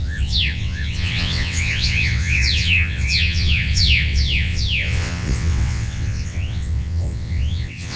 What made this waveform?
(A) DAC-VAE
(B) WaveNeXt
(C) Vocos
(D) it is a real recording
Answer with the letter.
B